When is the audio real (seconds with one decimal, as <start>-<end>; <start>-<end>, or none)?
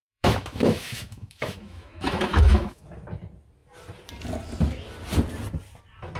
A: 2.8-6.2